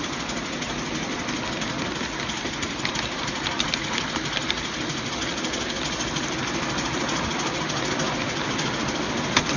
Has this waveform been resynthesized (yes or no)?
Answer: no